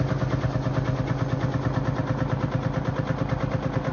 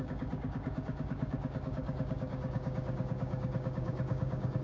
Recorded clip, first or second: first